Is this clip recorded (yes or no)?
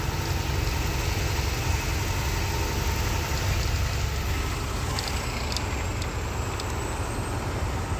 yes